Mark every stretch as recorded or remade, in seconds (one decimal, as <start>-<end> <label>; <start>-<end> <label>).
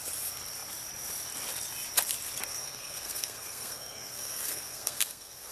0.0-2.5 recorded; 2.5-5.5 remade